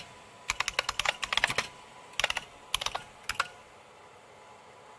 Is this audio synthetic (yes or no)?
no